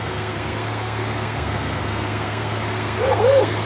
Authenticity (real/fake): fake